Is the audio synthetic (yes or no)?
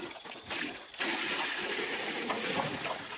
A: yes